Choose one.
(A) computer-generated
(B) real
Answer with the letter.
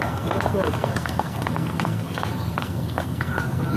A